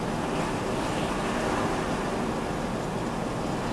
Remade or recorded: recorded